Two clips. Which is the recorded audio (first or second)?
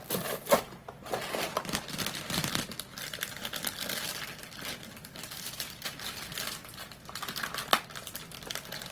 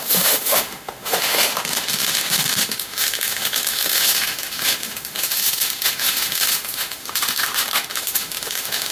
first